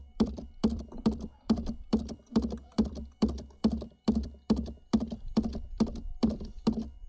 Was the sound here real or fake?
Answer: fake